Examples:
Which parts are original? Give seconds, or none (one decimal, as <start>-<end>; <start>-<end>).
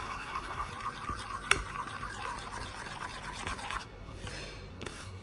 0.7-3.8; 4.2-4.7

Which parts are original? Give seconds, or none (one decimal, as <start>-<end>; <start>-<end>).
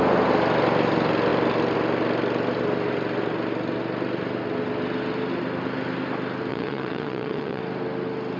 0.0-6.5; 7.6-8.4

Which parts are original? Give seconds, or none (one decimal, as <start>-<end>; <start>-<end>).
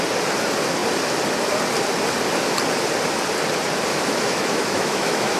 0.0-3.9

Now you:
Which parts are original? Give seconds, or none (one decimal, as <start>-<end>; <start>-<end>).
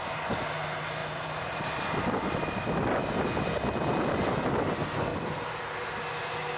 0.0-1.0; 1.8-5.1; 6.0-6.6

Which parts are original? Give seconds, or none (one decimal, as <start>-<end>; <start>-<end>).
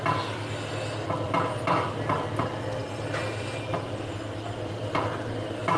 0.0-5.8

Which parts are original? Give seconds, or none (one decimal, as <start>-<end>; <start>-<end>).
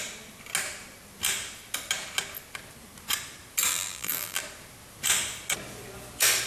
0.0-3.7; 4.4-6.5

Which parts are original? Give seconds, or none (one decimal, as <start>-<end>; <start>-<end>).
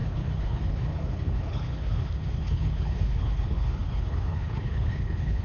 none